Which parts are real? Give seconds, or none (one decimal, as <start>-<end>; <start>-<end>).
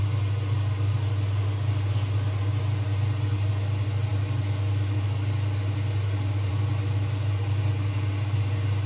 0.0-8.9